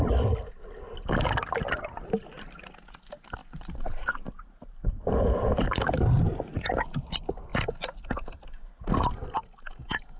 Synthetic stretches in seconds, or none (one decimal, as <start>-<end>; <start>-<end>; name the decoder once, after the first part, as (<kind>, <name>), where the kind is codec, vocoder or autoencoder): 3.4-5.9 (vocoder, BigVGAN v2)